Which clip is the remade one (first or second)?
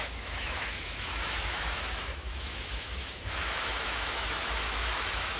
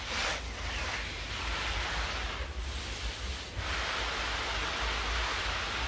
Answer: first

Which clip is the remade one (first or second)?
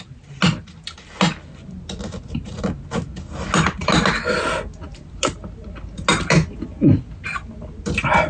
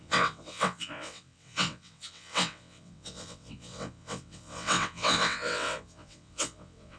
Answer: second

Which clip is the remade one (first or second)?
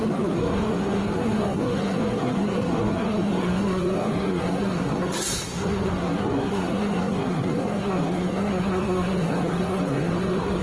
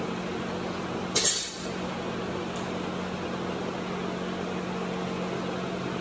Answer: first